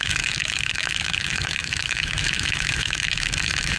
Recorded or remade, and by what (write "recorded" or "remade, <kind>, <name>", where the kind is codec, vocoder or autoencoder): remade, autoencoder, DAC-VAE